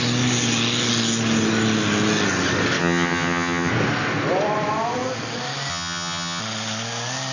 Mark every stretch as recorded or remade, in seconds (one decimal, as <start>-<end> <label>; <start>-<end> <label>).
0.0-2.8 recorded; 2.8-3.7 remade; 3.7-5.7 recorded; 5.7-6.4 remade; 6.4-7.3 recorded